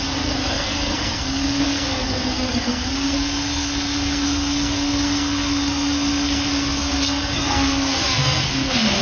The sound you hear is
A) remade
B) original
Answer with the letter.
A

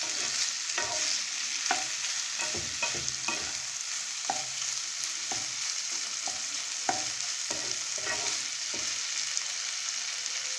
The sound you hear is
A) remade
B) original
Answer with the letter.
B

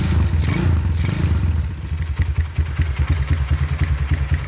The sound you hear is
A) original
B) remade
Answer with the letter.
A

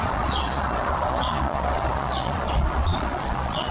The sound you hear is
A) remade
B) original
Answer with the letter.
A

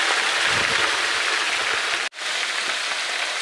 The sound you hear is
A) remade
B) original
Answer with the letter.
B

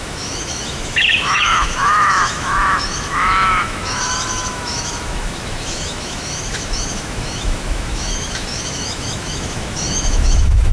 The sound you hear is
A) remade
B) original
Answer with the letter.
A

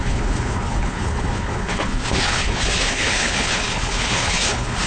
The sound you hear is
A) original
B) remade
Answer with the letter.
B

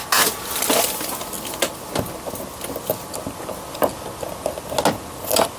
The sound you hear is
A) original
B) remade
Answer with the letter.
A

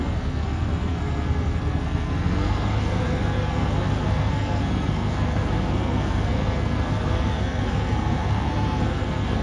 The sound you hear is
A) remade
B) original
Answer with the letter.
A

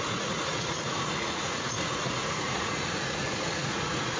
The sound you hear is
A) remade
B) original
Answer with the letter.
A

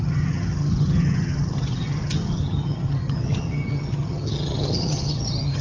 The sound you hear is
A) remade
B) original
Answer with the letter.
A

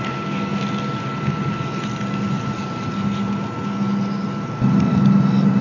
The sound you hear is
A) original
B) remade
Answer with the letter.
A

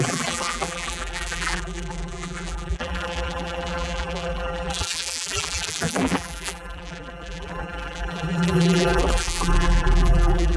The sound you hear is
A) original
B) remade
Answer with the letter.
B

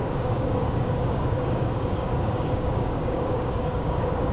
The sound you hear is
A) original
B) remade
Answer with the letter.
B